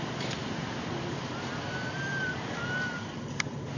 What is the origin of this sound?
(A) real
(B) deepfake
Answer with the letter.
A